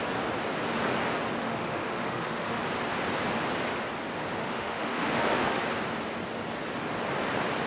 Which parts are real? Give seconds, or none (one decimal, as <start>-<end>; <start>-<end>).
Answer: 0.0-1.4; 2.6-4.4; 5.6-7.7